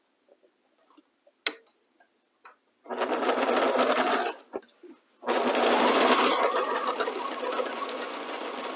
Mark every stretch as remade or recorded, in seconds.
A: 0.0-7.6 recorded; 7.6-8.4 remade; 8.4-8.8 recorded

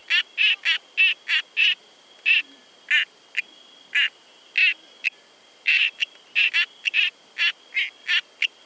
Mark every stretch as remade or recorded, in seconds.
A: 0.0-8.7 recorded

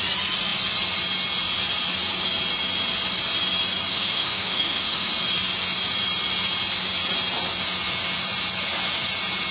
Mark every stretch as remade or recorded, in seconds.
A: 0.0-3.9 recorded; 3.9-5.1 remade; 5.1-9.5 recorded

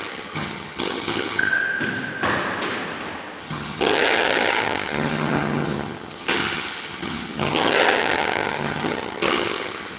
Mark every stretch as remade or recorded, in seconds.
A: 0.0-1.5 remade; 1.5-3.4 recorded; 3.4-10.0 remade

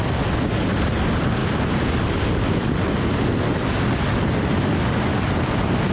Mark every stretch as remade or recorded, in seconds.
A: 0.0-5.9 recorded